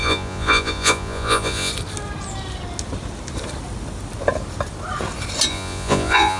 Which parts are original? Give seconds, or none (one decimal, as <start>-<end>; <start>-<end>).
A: 1.7-5.5